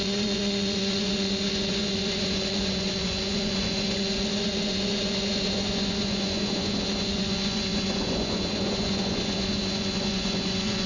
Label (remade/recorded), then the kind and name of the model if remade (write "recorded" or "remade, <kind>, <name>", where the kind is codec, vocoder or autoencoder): remade, vocoder, Vocos